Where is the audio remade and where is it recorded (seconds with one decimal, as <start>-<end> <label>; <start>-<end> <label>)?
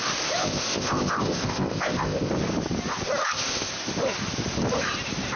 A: 0.0-0.4 recorded; 0.4-2.3 remade; 2.3-3.2 recorded; 3.2-3.7 remade; 3.7-5.4 recorded